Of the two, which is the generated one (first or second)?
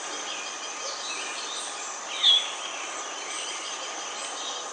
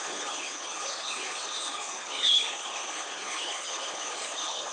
second